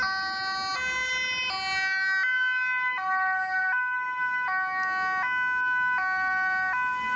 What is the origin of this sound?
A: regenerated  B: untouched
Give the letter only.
B